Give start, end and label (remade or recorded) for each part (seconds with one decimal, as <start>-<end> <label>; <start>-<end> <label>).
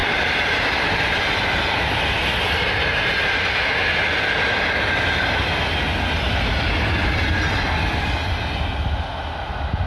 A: 0.0-9.9 recorded